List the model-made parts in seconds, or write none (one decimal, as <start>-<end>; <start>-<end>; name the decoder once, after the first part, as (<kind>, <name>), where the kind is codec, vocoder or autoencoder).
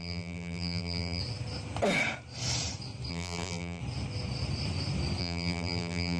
0.0-1.2 (vocoder, BigVGAN v2); 3.1-3.8; 5.2-6.2